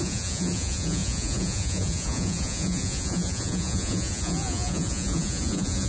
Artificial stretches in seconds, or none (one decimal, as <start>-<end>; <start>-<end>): 0.0-5.9